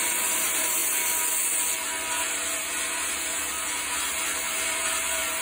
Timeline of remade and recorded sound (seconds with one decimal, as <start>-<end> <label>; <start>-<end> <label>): 0.0-0.8 remade; 0.8-2.1 recorded; 2.1-5.4 remade